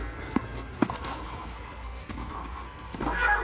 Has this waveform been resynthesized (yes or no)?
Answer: yes